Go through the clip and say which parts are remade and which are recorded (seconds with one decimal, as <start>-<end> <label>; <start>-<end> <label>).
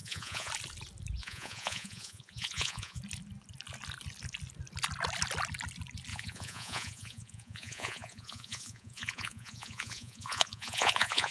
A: 0.0-0.5 remade; 0.5-1.2 recorded; 1.2-3.0 remade; 3.0-6.1 recorded; 6.1-11.3 remade